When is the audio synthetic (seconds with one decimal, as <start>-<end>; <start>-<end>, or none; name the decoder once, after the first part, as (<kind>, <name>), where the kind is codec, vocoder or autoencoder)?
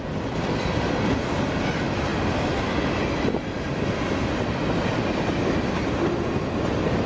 none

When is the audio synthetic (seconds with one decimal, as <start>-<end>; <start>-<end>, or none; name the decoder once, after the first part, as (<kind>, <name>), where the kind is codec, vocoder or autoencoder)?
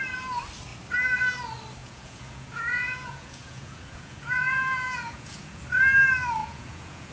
1.8-5.6 (vocoder, Vocos); 6.4-7.1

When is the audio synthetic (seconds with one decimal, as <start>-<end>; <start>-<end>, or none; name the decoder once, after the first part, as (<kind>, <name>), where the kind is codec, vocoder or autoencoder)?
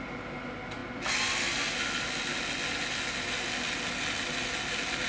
none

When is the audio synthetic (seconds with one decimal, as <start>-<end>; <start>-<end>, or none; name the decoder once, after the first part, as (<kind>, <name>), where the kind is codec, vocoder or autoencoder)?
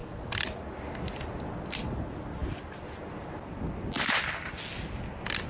none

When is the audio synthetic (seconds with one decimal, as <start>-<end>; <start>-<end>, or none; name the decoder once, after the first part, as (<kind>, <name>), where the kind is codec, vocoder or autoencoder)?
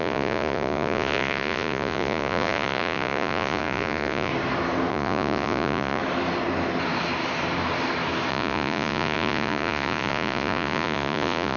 0.0-4.3 (vocoder, Vocos); 4.9-6.0; 8.3-11.6